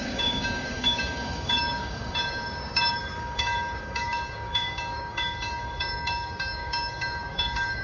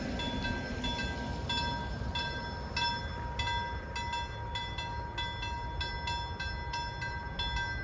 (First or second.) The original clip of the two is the second